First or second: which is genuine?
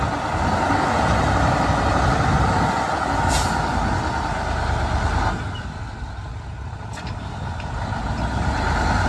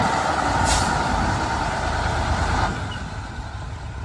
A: first